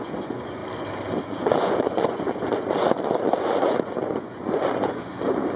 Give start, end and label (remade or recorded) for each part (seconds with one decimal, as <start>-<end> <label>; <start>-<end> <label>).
0.0-0.6 remade; 0.6-1.2 recorded; 1.2-5.6 remade